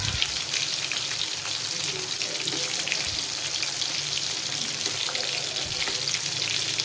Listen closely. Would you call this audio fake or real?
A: real